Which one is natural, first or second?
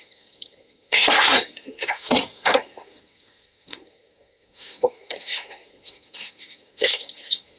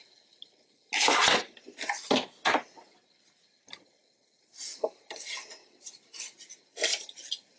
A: second